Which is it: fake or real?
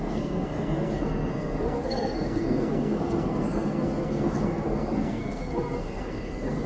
fake